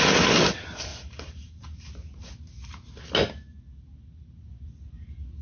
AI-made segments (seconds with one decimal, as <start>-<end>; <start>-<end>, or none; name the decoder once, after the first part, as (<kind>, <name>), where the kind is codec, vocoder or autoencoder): 0.9-2.3 (vocoder, BigVGAN v2)